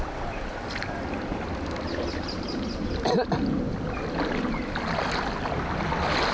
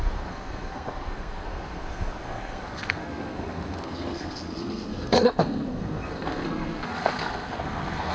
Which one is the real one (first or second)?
first